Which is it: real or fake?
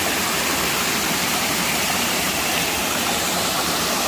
fake